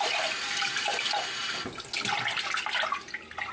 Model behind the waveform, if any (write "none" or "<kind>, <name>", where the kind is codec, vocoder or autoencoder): none